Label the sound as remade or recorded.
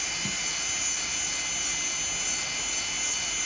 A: recorded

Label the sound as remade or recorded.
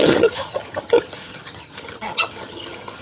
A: remade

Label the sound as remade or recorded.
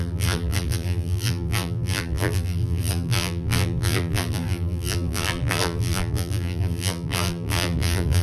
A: remade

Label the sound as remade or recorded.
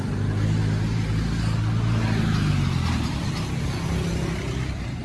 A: recorded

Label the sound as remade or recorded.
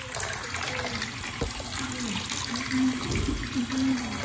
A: recorded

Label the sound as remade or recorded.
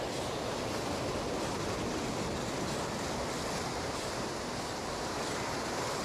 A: recorded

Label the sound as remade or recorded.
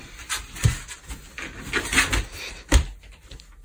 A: recorded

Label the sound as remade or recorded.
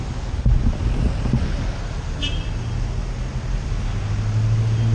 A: recorded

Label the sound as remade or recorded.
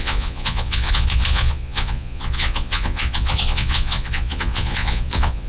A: remade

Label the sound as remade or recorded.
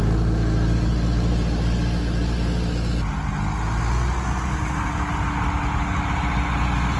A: recorded